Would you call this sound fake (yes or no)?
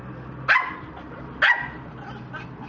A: no